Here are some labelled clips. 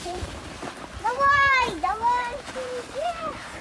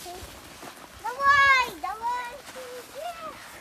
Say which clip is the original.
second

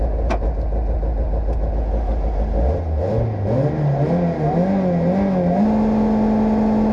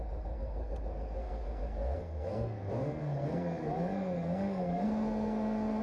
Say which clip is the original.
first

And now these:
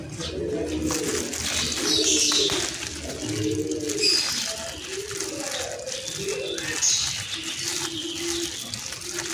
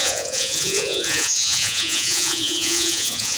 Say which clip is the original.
first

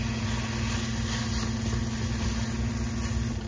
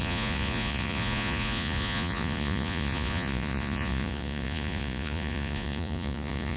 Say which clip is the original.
first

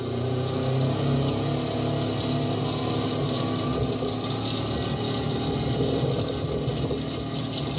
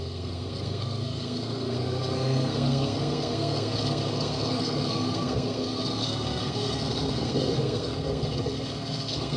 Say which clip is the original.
first